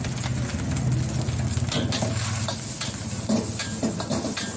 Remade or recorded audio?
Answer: recorded